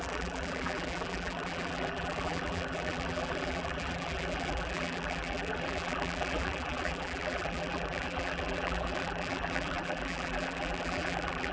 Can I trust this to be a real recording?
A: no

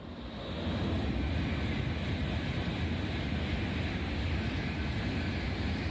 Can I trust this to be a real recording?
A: yes